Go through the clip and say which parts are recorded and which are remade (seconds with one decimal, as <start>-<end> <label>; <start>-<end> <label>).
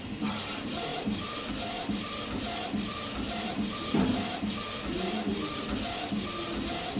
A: 0.0-0.9 recorded; 0.9-1.5 remade; 1.5-7.0 recorded